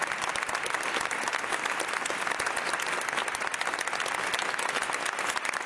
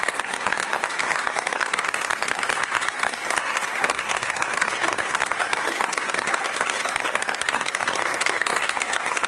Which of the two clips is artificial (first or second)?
second